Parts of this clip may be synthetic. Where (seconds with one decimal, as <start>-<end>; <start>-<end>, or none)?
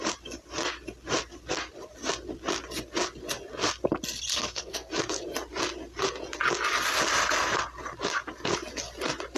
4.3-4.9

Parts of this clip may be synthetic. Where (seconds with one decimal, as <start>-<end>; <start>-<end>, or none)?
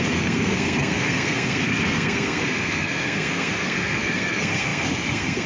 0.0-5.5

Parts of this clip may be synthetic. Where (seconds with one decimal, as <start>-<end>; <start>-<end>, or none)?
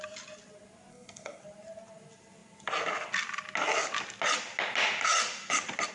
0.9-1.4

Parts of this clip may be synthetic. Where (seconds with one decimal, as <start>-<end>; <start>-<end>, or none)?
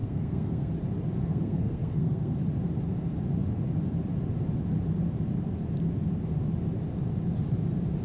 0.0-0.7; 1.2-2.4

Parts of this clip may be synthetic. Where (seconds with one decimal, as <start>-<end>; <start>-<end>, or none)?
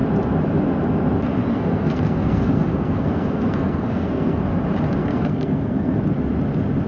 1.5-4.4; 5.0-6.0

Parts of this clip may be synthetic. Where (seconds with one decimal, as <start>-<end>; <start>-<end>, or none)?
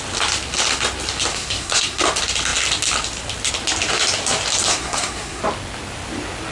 1.3-2.0; 4.7-5.4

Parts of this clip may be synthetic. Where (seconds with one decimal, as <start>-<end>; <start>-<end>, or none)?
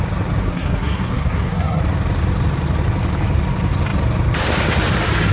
0.4-1.8